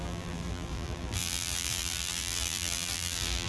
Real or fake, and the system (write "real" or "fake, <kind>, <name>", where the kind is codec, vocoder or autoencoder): fake, vocoder, BigVGAN v2